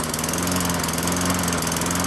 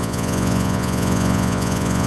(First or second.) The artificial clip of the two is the second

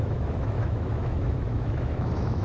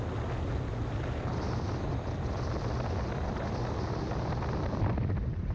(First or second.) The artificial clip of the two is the first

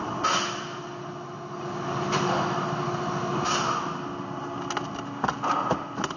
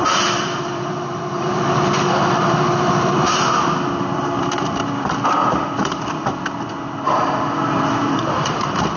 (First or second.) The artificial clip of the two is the second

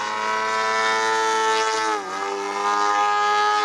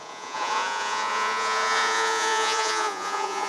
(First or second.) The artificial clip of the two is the second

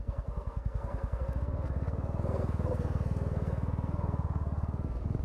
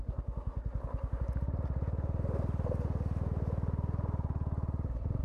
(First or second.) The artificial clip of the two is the first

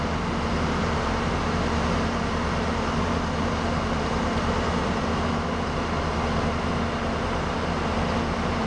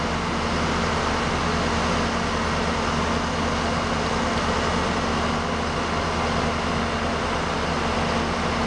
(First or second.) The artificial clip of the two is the first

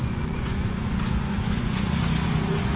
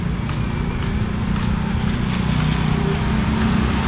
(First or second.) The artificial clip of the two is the first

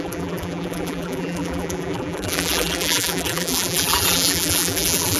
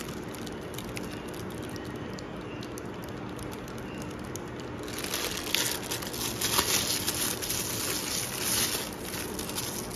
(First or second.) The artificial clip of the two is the first